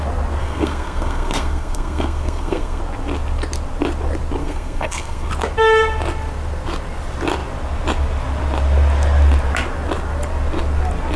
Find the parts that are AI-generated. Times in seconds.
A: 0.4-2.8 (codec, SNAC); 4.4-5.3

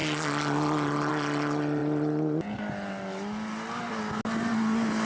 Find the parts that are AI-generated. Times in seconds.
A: none

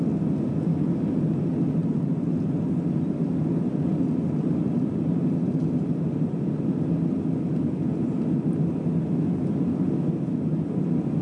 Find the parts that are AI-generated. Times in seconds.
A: none

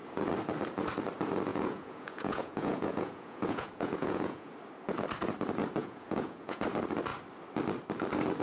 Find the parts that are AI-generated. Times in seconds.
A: 1.5-4.5 (vocoder, Vocos); 5.8-6.6